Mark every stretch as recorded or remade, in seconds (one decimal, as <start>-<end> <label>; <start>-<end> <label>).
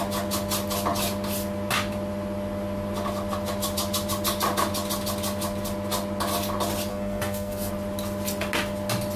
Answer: 0.0-6.9 recorded; 6.9-7.7 remade; 7.7-9.2 recorded